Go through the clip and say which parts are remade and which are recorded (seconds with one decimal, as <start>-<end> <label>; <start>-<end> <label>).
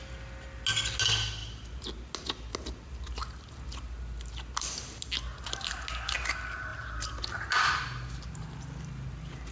0.0-9.5 recorded